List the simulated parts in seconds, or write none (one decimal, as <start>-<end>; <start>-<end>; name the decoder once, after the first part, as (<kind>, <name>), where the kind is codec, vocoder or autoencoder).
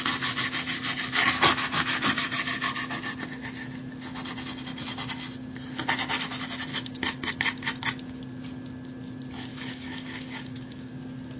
9.5-10.9 (codec, DAC)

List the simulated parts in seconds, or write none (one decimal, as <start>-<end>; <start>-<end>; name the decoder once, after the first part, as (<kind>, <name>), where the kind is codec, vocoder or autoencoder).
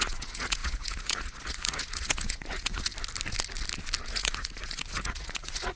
0.0-2.9 (vocoder, Vocos); 4.1-5.8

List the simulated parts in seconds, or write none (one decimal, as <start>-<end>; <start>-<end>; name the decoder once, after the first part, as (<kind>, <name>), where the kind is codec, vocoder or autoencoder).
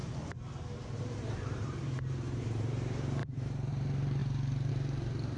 1.0-4.2 (vocoder, BigVGAN v2); 4.7-5.4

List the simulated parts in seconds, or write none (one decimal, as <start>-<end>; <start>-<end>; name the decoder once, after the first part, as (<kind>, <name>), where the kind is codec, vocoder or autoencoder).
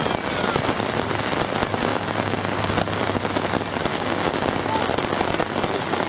1.9-2.7 (codec, DAC); 3.9-4.7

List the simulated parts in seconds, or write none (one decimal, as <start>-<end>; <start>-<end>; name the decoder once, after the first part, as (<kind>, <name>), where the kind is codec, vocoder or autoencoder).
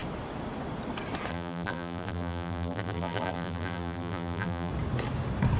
1.3-4.7 (vocoder, BigVGAN v2)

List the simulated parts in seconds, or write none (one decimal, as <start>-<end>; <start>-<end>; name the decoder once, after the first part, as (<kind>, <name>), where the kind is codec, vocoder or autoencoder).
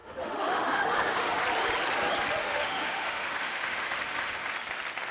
0.0-1.4 (autoencoder, DAC-VAE); 2.4-4.5